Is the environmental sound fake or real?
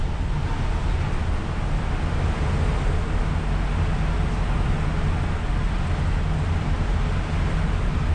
real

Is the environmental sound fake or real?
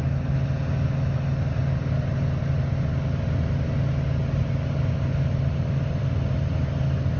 real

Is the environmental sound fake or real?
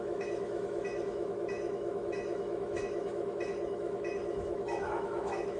fake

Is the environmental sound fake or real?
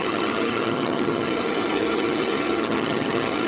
fake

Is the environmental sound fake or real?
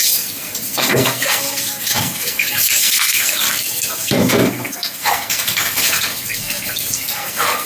fake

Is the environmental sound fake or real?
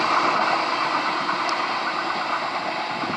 real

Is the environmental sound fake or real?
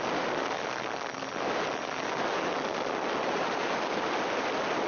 real